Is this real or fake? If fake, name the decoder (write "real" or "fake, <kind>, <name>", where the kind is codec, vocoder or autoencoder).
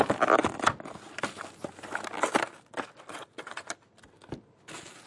real